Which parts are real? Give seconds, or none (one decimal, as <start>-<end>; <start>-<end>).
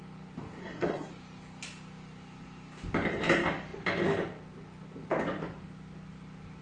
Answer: 0.0-0.6; 1.1-6.6